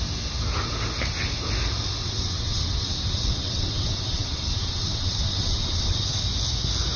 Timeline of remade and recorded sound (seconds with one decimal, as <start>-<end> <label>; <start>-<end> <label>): 0.0-2.0 recorded; 2.0-6.2 remade; 6.2-7.0 recorded